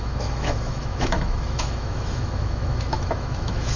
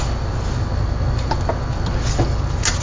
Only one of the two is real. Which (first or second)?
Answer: second